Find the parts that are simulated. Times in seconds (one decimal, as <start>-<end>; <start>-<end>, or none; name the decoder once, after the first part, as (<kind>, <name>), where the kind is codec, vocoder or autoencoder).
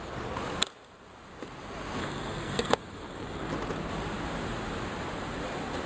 2.0-3.5 (codec, SNAC)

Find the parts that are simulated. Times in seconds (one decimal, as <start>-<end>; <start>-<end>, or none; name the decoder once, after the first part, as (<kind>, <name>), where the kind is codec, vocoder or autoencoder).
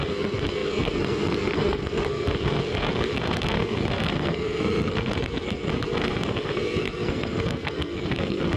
0.0-8.6 (codec, SNAC)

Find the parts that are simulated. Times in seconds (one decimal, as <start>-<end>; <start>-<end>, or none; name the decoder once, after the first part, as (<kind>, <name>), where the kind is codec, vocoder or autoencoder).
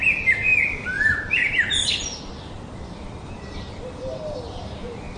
none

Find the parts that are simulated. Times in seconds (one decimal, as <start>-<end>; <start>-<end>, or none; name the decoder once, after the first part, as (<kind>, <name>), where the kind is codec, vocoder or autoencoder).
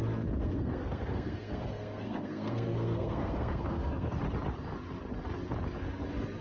0.4-4.2 (codec, SNAC)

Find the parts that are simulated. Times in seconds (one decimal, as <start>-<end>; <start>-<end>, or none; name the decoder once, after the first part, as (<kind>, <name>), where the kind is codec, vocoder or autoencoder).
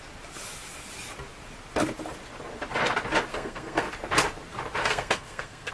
3.3-3.9 (codec, SNAC); 4.8-5.7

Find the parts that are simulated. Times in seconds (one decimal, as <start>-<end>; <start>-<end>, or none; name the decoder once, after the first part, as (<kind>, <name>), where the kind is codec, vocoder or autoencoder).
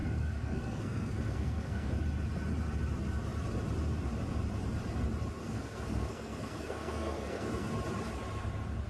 0.0-2.0 (codec, SNAC); 5.4-7.7